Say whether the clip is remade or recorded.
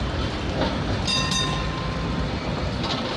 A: recorded